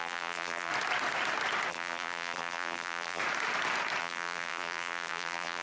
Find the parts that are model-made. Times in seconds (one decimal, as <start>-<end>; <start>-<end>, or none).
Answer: 0.0-0.7; 1.7-3.2; 4.0-5.6